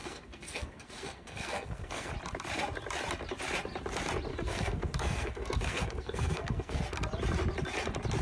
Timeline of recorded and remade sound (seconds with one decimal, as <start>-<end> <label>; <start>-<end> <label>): 0.0-2.1 remade; 2.1-4.3 recorded; 4.3-6.8 remade; 6.8-8.2 recorded